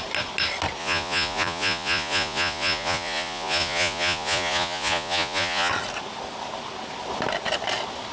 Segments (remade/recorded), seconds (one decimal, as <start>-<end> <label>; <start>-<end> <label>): 0.0-0.8 recorded; 0.8-5.7 remade; 5.7-8.1 recorded